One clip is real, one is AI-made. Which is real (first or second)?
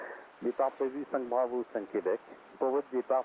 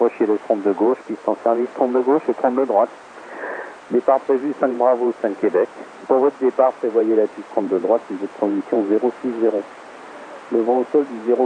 first